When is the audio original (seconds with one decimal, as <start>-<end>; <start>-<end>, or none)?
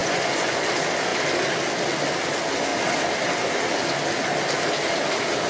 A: 0.7-5.5